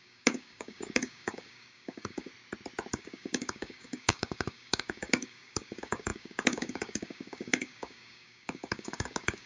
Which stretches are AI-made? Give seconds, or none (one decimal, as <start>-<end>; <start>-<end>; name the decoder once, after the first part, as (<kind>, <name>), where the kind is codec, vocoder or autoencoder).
0.0-2.3 (codec, DAC); 2.9-9.5